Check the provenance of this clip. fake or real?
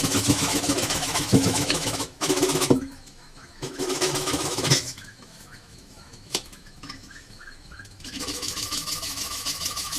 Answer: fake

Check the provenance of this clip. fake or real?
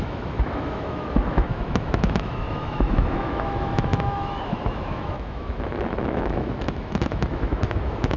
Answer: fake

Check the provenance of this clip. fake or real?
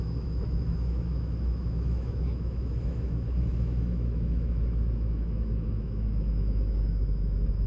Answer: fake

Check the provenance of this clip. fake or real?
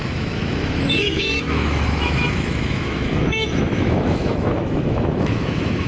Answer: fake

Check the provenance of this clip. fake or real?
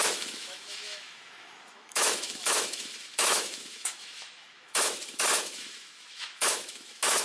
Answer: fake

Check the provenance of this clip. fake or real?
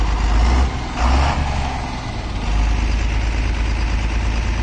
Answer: real